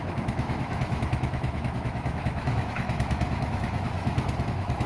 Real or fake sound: fake